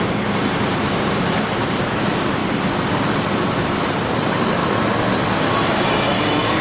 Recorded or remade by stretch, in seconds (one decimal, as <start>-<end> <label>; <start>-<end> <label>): 0.0-2.4 remade; 2.4-2.9 recorded; 2.9-4.6 remade; 4.6-5.5 recorded; 5.5-6.6 remade